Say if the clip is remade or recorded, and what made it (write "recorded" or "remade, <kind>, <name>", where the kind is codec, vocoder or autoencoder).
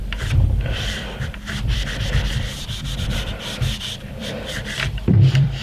remade, vocoder, BigVGAN v2